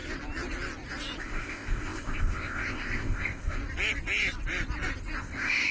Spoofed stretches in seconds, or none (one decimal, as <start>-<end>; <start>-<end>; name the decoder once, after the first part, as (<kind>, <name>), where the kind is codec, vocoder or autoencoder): 1.2-3.6 (codec, ZipCodec); 5.2-5.7